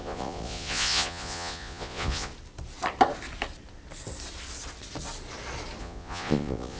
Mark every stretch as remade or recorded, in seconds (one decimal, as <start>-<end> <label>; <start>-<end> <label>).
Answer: 0.0-2.3 remade; 2.3-5.8 recorded; 5.8-6.8 remade